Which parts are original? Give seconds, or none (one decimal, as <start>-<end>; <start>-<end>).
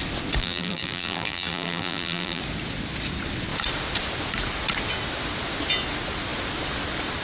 0.0-0.4; 2.4-7.2